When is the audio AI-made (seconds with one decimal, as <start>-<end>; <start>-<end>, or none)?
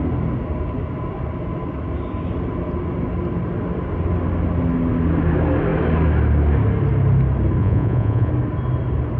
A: 7.6-8.3